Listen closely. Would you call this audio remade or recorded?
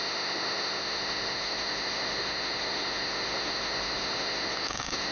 remade